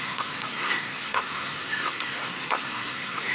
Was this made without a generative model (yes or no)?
no